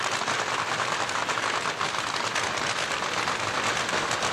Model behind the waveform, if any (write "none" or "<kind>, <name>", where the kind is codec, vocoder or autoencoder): vocoder, BigVGAN v2